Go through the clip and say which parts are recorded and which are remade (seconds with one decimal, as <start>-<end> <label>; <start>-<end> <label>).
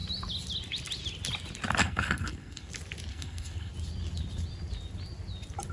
0.0-1.8 recorded; 1.8-2.7 remade; 2.7-3.1 recorded; 3.1-3.7 remade; 3.7-5.7 recorded